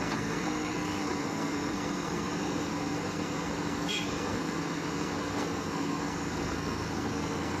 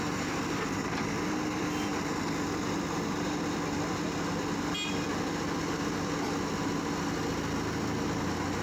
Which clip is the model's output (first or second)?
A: first